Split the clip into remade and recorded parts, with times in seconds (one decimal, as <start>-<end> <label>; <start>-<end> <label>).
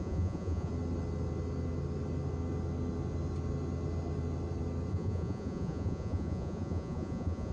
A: 0.0-0.7 remade; 0.7-4.9 recorded; 4.9-7.5 remade